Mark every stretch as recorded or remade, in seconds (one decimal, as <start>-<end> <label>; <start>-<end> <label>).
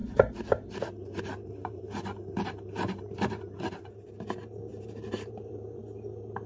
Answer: 0.0-3.9 remade; 3.9-4.7 recorded; 4.7-5.8 remade; 5.8-6.5 recorded